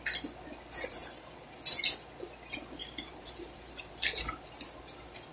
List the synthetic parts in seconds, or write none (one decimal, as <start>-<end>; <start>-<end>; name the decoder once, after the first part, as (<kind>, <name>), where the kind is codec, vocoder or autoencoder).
0.9-1.5 (vocoder, BigVGAN v2); 2.8-4.5